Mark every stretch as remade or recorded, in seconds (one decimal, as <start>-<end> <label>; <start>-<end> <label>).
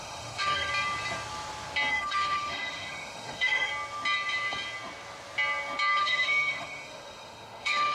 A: 0.0-0.7 remade; 0.7-1.9 recorded; 1.9-3.7 remade; 3.7-6.0 recorded; 6.0-7.9 remade